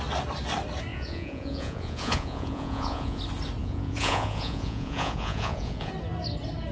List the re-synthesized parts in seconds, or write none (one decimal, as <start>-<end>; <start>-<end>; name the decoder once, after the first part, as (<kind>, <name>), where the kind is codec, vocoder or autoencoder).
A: 0.9-3.2 (vocoder, Vocos); 3.6-5.9

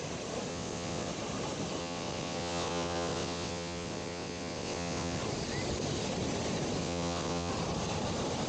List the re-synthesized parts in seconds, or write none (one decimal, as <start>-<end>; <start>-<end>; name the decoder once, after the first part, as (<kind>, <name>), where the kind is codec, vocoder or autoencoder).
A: 0.5-1.1 (vocoder, WaveNeXt); 1.8-5.2; 6.8-7.5

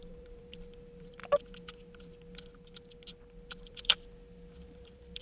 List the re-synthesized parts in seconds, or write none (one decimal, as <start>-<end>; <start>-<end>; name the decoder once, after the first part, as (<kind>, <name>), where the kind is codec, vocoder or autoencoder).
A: 0.0-1.2 (vocoder, BigVGAN v2); 3.5-3.9; 4.7-5.2

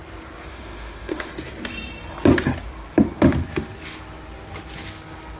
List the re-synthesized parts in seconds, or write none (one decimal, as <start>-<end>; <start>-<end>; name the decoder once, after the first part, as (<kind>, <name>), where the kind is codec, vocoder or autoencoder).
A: 0.5-1.3 (autoencoder, DAC-VAE)

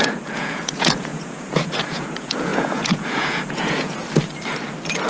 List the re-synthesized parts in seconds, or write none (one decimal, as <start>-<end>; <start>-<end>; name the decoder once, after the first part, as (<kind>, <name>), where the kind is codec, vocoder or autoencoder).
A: 0.0-4.0 (vocoder, Vocos)

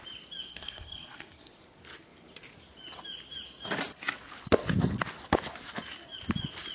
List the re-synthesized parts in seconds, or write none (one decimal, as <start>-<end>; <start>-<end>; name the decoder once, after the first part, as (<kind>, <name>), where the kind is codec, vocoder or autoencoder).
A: 0.5-1.5 (codec, SNAC)